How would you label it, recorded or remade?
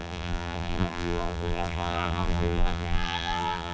remade